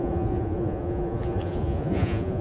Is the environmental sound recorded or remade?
remade